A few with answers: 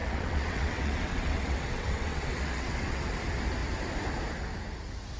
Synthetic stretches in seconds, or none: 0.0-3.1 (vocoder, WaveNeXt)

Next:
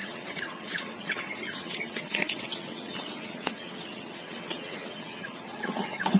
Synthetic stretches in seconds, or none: 0.0-6.2 (vocoder, WaveNeXt)

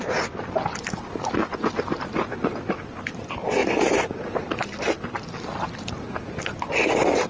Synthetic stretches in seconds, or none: none

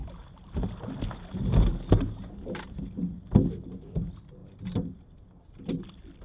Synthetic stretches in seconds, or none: none